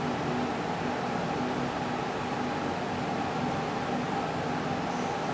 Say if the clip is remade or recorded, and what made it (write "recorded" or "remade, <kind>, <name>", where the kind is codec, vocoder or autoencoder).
recorded